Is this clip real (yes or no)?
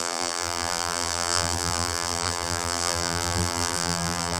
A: no